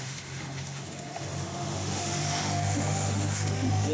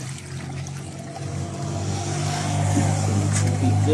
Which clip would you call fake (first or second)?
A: first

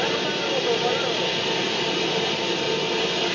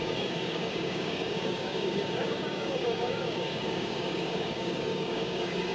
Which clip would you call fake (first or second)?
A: second